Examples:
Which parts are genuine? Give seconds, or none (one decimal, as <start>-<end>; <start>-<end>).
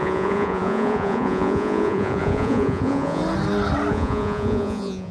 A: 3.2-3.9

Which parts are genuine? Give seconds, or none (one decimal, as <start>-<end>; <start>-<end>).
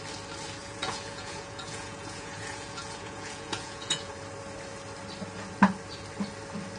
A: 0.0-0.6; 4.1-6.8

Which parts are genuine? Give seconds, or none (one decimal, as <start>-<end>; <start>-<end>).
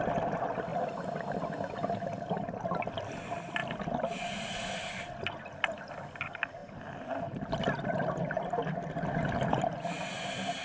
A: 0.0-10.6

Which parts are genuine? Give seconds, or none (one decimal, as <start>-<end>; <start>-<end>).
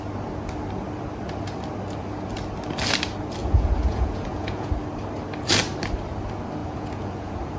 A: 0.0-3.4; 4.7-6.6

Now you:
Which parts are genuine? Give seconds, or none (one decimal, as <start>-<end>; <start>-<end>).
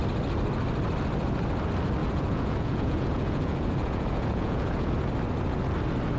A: 0.0-2.0; 4.9-6.2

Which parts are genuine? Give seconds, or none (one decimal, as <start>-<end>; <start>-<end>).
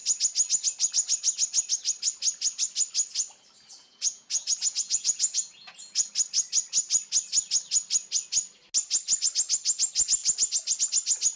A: 0.0-3.8; 6.1-11.4